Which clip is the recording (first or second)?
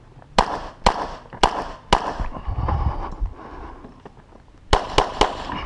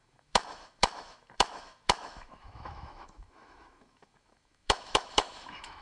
first